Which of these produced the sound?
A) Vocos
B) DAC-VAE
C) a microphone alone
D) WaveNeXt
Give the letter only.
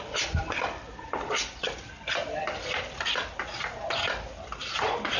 C